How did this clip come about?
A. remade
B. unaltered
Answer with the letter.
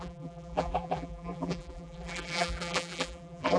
A